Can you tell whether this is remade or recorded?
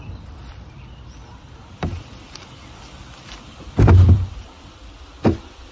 remade